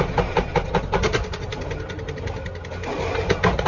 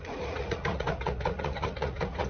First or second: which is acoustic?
first